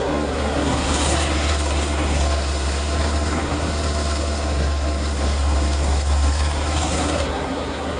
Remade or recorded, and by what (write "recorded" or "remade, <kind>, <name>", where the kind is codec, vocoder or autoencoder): remade, codec, SNAC